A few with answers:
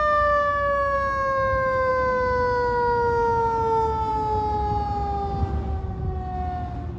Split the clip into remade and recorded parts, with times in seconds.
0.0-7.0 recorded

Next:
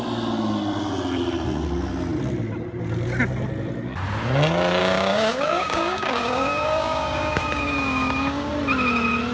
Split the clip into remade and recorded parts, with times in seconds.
0.0-4.8 recorded; 4.8-8.5 remade; 8.5-9.3 recorded